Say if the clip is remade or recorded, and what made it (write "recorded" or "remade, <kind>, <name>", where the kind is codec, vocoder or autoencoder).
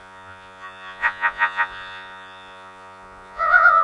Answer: remade, vocoder, Vocos